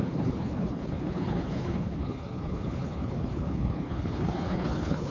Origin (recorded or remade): remade